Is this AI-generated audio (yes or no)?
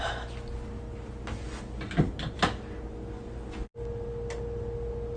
no